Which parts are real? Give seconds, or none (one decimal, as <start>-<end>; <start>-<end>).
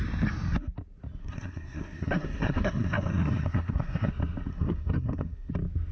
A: 0.0-1.2; 4.1-4.5; 5.5-5.9